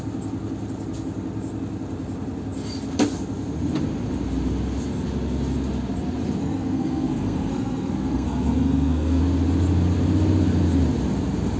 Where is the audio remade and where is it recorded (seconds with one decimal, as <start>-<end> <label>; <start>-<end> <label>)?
0.0-6.4 recorded; 6.4-9.2 remade; 9.2-11.6 recorded